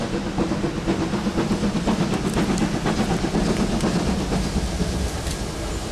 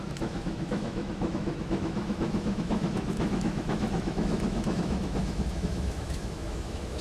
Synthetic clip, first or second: second